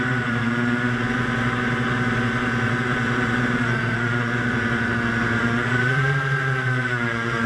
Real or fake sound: fake